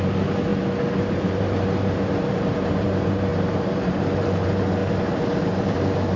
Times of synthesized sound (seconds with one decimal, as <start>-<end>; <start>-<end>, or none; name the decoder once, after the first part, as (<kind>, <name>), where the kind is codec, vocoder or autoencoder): 0.0-0.5 (vocoder, BigVGAN v2); 1.1-4.8; 5.4-6.2